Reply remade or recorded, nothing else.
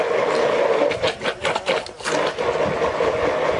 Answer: recorded